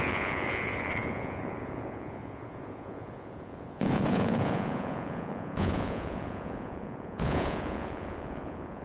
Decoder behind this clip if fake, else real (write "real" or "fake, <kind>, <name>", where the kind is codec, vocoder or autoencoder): fake, vocoder, Vocos